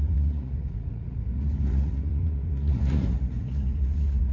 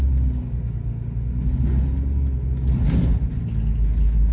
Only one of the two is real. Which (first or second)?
second